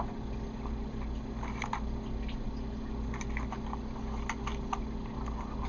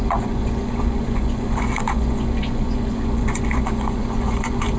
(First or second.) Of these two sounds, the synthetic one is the second